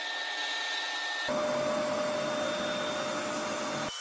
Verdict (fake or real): real